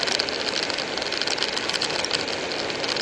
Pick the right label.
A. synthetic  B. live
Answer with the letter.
B